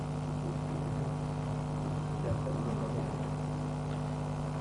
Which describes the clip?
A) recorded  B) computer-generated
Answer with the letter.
A